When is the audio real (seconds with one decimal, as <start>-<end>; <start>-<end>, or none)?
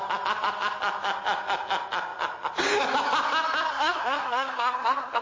0.0-3.7